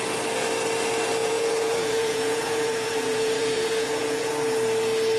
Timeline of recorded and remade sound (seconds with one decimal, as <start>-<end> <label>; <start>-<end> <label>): 0.0-1.2 recorded; 1.2-4.3 remade; 4.3-5.2 recorded